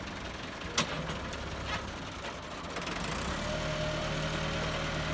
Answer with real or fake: real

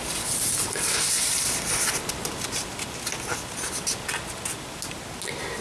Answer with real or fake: real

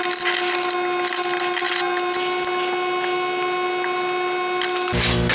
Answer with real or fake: real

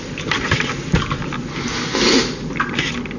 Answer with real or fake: real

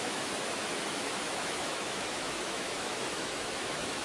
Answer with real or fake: fake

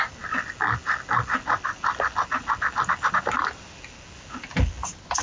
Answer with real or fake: real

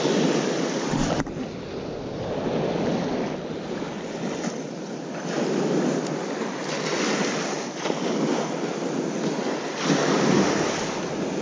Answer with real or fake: real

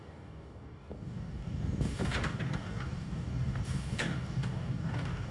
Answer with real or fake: fake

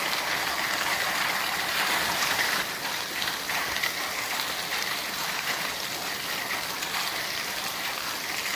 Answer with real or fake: real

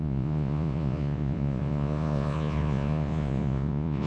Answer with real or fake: fake